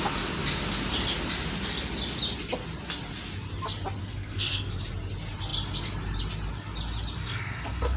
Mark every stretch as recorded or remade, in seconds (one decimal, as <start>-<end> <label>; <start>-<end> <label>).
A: 0.0-4.0 recorded; 4.0-4.8 remade; 4.8-7.2 recorded; 7.2-8.0 remade